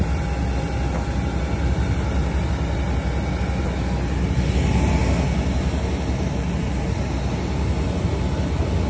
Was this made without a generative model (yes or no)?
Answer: yes